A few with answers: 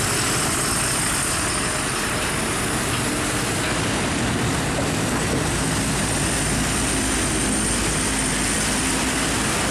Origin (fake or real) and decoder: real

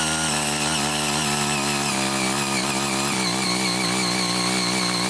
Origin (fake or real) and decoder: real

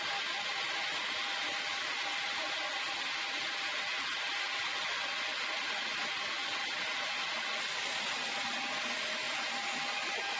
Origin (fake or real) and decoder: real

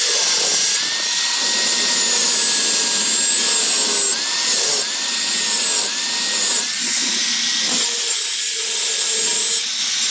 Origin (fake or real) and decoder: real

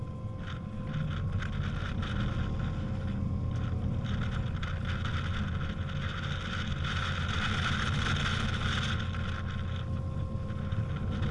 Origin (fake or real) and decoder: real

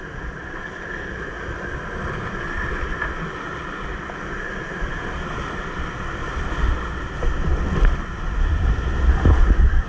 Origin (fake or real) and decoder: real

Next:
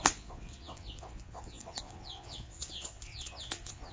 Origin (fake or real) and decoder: fake, vocoder, Vocos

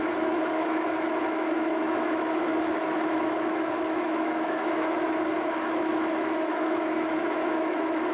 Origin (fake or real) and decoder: fake, autoencoder, DAC-VAE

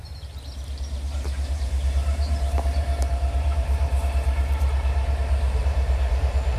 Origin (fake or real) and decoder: fake, vocoder, BigVGAN v2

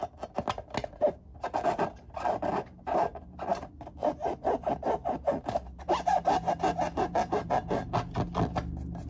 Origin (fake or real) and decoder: real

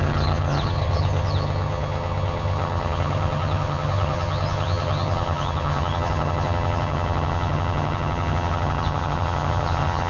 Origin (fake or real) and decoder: fake, vocoder, HiFi-GAN